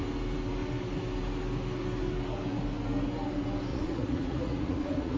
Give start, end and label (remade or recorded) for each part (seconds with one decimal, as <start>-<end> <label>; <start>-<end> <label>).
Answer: 0.0-3.7 recorded; 3.7-5.2 remade